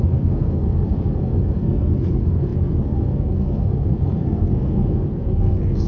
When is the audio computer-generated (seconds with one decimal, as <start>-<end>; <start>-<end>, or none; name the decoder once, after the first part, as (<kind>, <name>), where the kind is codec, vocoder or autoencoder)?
0.0-5.9 (codec, SNAC)